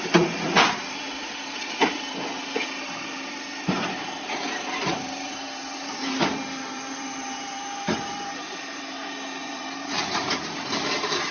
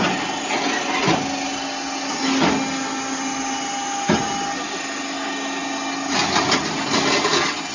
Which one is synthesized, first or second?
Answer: first